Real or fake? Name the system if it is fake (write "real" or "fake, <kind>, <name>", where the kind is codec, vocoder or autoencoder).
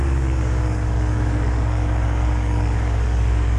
fake, codec, DAC